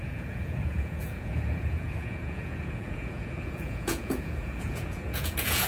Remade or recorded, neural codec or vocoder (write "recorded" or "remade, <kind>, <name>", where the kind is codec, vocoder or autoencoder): remade, vocoder, Vocos